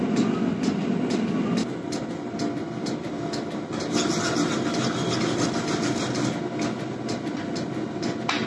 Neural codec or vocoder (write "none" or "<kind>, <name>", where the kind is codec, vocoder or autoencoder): none